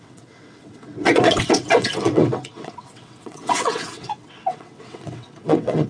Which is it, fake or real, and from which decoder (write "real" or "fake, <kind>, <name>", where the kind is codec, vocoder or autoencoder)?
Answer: fake, vocoder, WaveNeXt